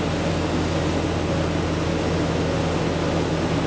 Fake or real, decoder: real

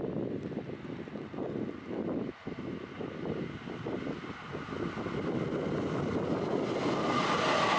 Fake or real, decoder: real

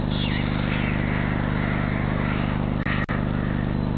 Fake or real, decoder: real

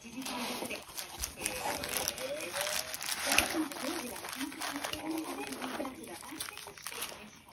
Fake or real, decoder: real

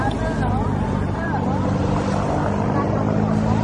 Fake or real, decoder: real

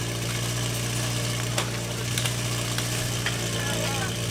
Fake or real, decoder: real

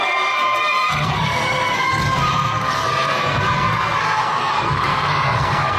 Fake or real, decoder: fake, codec, SNAC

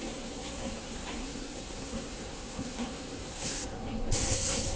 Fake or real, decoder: fake, codec, SNAC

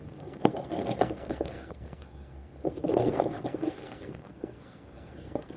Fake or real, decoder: fake, codec, SNAC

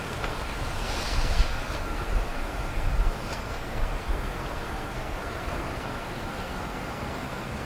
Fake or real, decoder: fake, codec, SNAC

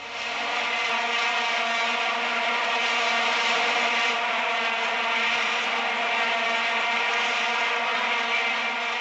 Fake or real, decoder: real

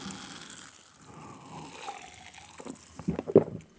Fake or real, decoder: real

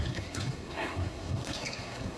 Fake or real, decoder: fake, codec, SNAC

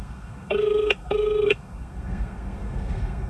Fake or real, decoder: fake, codec, SNAC